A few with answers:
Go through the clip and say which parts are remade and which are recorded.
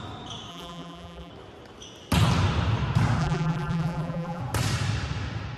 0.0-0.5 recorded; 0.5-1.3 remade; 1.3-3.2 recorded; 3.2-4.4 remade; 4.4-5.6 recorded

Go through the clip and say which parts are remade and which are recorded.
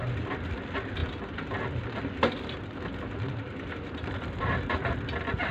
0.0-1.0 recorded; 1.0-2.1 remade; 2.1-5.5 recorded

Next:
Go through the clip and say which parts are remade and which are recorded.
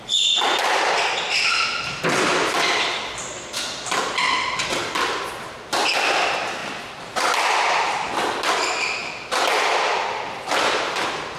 0.0-11.4 recorded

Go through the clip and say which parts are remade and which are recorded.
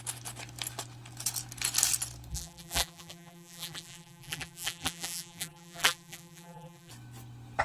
0.0-2.3 recorded; 2.3-6.9 remade; 6.9-7.6 recorded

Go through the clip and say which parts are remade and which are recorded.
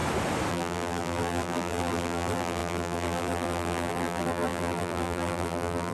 0.0-0.5 recorded; 0.5-5.9 remade